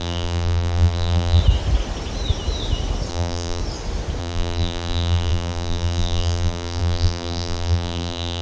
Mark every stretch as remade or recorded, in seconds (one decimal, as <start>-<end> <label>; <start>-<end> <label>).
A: 0.0-1.4 remade; 1.4-3.1 recorded; 3.1-3.6 remade; 3.6-4.2 recorded; 4.2-8.4 remade